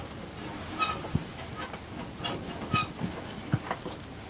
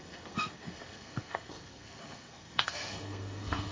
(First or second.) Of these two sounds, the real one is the first